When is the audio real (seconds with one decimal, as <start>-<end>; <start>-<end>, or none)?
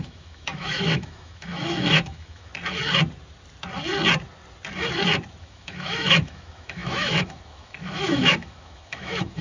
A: 2.5-5.4